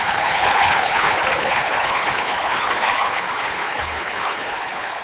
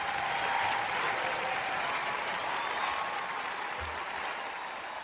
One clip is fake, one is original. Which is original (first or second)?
second